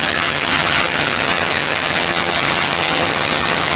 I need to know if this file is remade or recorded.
remade